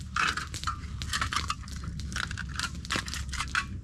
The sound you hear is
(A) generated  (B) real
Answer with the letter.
B